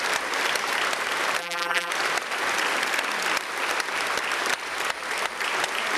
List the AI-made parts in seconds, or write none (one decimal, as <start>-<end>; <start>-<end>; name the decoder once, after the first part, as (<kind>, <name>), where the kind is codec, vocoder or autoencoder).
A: 1.4-1.9 (vocoder, BigVGAN v2)